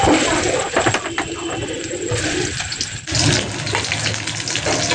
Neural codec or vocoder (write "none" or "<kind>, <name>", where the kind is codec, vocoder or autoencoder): none